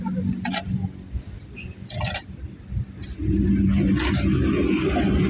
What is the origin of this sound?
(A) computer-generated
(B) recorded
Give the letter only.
B